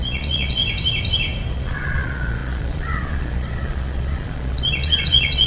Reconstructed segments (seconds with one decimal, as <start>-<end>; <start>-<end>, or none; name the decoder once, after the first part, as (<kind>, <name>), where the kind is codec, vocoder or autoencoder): 0.0-0.6 (vocoder, Vocos); 1.5-5.5